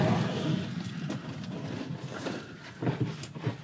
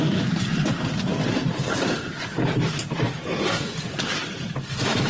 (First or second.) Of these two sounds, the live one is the first